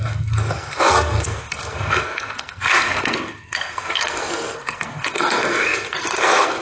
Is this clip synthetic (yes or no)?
yes